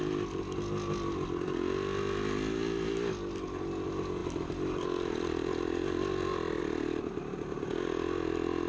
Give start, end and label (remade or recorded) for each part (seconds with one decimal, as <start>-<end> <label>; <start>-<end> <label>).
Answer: 0.0-8.7 recorded